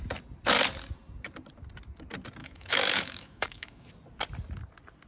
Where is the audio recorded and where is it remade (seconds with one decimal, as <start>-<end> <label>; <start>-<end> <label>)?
0.0-2.4 recorded; 2.4-3.9 remade; 3.9-5.1 recorded